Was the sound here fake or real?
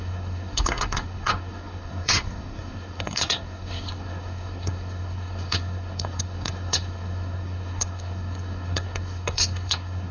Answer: fake